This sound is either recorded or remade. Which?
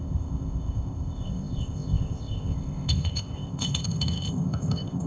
remade